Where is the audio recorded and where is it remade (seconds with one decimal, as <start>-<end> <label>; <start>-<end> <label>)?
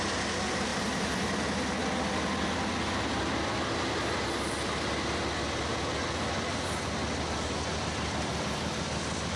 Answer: 0.0-0.7 recorded; 0.7-1.3 remade; 1.3-8.3 recorded; 8.3-8.8 remade; 8.8-9.4 recorded